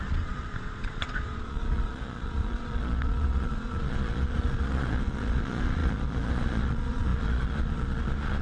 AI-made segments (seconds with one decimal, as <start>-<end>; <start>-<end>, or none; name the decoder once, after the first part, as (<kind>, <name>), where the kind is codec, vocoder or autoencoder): 0.0-8.4 (vocoder, Vocos)